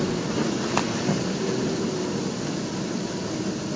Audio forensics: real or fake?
real